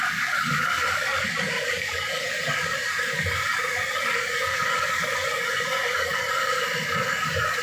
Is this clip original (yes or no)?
no